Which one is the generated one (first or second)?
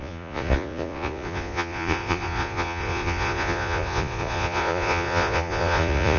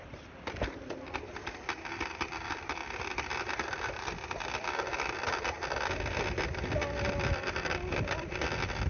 first